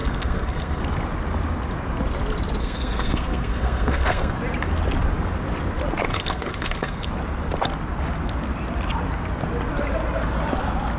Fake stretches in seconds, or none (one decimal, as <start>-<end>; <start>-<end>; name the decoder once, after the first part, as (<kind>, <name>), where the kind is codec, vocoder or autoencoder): 0.0-0.8 (codec, SNAC); 2.6-4.3; 6.1-7.1